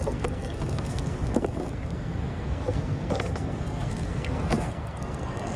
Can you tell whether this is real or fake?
fake